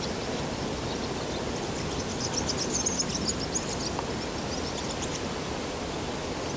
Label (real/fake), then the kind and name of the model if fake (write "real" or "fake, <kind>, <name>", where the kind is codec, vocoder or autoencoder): real